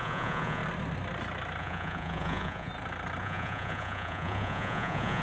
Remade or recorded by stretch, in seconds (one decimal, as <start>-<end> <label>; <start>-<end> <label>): 0.0-0.6 remade; 0.6-1.6 recorded; 1.6-2.7 remade; 2.7-3.2 recorded; 3.2-5.2 remade